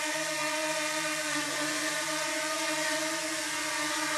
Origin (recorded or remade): remade